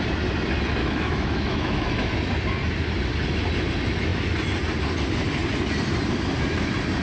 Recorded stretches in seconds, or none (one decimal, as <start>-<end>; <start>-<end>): 0.0-0.8; 2.1-7.0